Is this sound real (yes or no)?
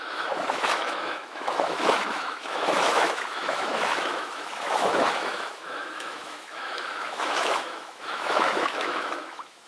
no